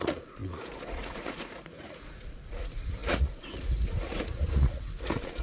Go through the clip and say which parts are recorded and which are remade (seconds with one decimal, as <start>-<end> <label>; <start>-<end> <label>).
0.0-5.4 remade